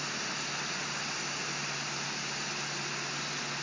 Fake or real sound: real